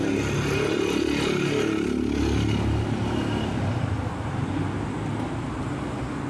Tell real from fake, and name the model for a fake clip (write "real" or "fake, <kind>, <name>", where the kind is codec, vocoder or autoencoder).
real